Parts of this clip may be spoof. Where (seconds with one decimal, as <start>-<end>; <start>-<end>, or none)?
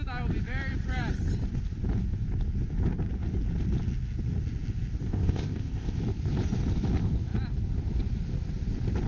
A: 5.1-6.0